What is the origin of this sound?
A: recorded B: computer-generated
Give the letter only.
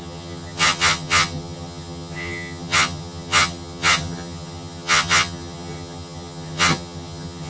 B